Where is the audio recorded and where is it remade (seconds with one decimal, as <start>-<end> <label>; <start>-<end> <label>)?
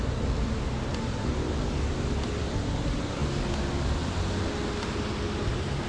0.0-5.9 recorded